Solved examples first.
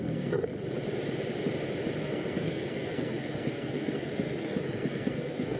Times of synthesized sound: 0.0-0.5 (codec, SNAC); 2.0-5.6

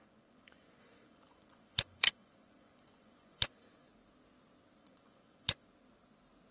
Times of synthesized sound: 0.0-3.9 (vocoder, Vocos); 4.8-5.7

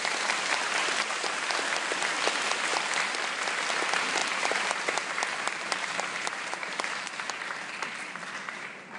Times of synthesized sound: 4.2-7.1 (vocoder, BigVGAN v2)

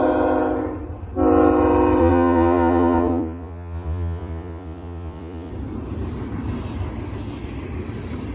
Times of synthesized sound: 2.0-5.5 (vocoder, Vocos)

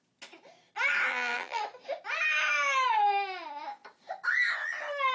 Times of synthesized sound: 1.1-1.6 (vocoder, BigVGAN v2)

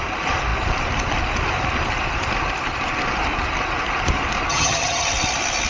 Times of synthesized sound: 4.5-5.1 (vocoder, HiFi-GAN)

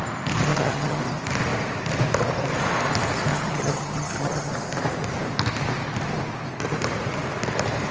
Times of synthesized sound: 0.5-1.0 (vocoder, HiFi-GAN); 3.3-4.5

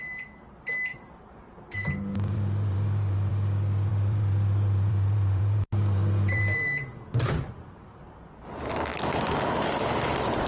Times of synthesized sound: 0.9-3.3 (vocoder, BigVGAN v2); 3.9-8.4